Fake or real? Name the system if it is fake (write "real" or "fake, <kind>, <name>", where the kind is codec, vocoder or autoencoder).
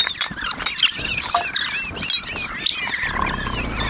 real